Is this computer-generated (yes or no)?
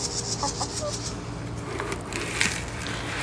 no